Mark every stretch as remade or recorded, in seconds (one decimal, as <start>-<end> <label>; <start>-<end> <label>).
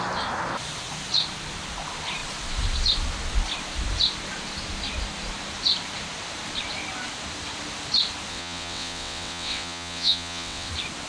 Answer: 0.0-8.3 recorded; 8.3-10.7 remade; 10.7-11.1 recorded